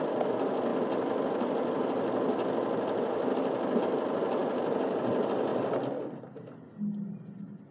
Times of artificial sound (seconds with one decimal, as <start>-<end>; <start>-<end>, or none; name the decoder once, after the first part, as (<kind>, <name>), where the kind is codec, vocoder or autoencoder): none